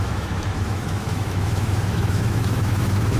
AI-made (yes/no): yes